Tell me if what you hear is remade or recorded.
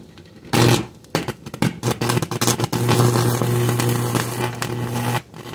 recorded